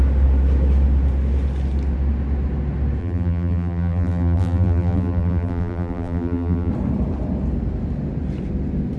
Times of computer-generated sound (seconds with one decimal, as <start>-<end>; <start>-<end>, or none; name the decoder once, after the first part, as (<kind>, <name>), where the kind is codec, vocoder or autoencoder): 3.0-6.7 (vocoder, BigVGAN v2)